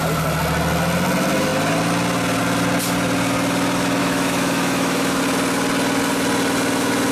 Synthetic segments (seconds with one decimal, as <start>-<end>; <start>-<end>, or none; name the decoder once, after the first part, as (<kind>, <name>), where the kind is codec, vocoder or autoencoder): 4.0-5.2 (autoencoder, DAC-VAE)